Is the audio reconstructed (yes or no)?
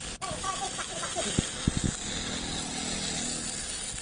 no